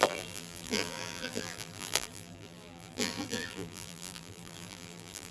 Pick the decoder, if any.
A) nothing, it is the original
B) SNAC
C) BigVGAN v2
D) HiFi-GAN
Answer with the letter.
C